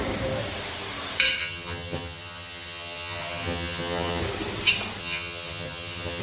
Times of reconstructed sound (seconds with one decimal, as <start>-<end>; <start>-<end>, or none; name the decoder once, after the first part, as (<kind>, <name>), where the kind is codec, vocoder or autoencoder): 1.4-4.2 (vocoder, HiFi-GAN); 5.0-6.2